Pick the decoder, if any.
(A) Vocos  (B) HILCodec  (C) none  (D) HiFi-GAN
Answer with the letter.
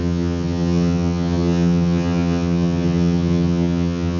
D